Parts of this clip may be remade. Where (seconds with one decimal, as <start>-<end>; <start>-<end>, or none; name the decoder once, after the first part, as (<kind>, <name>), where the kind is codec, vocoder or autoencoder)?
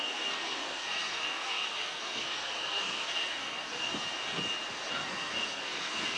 0.0-3.9 (codec, SNAC); 4.9-6.2